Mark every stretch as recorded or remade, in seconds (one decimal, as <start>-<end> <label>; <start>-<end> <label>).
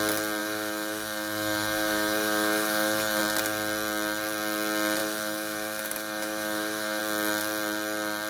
0.0-0.4 recorded; 0.4-3.2 remade; 3.2-5.0 recorded; 5.0-7.0 remade; 7.0-8.3 recorded